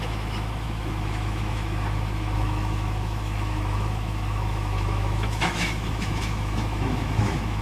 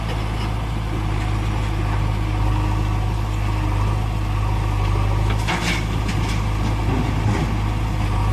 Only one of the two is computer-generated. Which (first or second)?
first